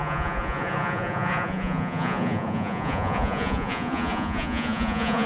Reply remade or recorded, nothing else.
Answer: remade